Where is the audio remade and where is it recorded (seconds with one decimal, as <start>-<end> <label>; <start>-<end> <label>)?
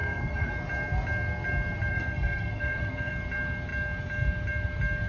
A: 0.0-0.5 remade; 0.5-1.9 recorded; 1.9-3.1 remade; 3.1-5.1 recorded